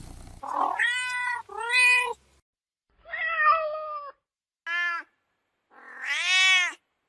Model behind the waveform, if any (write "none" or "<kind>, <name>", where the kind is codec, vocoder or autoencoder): none